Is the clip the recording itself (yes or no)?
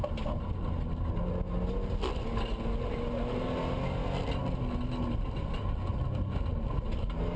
yes